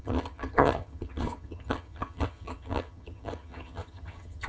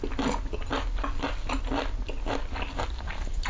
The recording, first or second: second